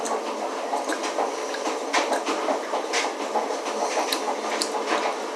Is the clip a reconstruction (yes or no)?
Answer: no